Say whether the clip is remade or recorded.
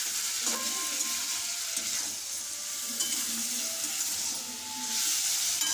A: recorded